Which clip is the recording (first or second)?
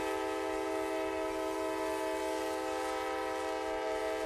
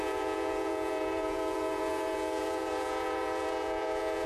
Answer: first